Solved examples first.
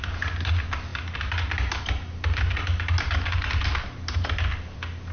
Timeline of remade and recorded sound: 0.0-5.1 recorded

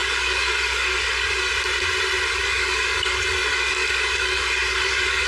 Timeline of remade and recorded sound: 0.0-1.5 remade; 1.5-2.3 recorded; 2.3-5.3 remade

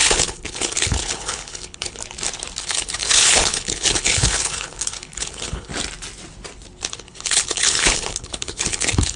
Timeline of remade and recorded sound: 0.0-2.0 remade; 2.0-2.6 recorded; 2.6-5.7 remade; 5.7-6.9 recorded; 6.9-9.2 remade

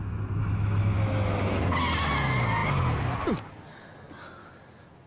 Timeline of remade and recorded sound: 0.0-0.4 recorded; 0.4-1.4 remade; 1.4-5.1 recorded

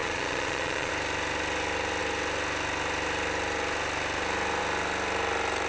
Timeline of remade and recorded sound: 0.0-0.9 remade; 0.9-5.7 recorded